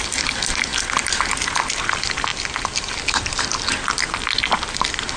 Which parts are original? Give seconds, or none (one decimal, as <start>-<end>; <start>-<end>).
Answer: 0.0-5.2